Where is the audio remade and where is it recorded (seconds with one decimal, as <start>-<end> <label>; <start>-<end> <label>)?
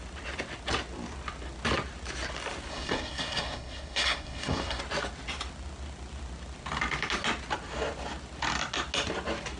0.0-2.7 recorded; 2.7-4.8 remade; 4.8-9.6 recorded